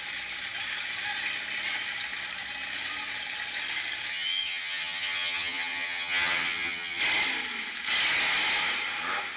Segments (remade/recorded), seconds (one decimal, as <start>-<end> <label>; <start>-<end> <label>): 0.0-4.1 recorded; 4.1-7.0 remade; 7.0-9.4 recorded